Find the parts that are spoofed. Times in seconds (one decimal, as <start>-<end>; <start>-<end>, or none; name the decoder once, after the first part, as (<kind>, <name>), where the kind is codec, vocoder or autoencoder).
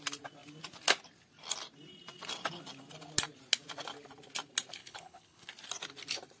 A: 4.8-5.5 (codec, HILCodec)